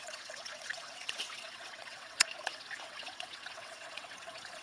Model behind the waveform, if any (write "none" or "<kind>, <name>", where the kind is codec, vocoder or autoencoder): vocoder, WaveNeXt